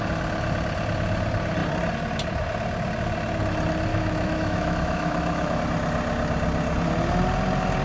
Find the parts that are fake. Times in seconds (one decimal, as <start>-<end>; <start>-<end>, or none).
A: 3.9-5.6